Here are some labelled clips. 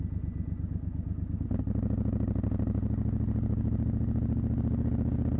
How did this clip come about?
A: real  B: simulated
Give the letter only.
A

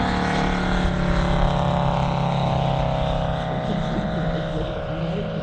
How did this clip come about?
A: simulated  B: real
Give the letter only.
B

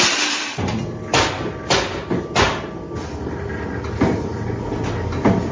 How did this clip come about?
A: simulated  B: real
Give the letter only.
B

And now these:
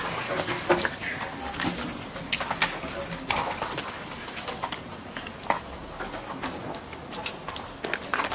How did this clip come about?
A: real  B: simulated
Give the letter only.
A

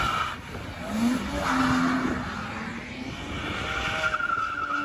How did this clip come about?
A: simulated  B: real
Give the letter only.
B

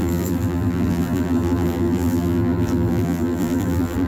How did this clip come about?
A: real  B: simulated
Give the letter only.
B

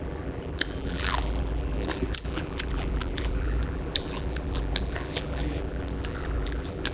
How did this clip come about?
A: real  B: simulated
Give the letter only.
B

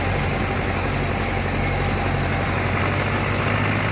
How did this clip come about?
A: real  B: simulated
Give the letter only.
A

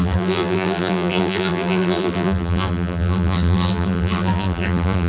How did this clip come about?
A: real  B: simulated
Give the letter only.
B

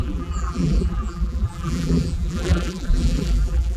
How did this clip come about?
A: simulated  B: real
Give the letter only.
A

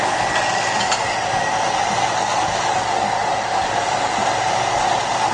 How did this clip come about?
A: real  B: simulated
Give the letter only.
A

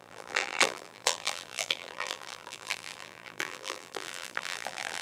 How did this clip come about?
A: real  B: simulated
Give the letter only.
B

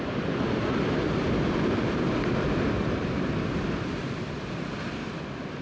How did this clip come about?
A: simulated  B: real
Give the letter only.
A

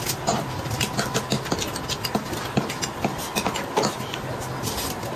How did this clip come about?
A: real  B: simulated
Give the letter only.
A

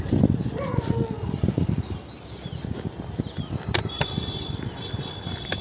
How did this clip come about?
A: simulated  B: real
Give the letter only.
B